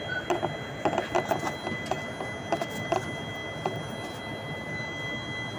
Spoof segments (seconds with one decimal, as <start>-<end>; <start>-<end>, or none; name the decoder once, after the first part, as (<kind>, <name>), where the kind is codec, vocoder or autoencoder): none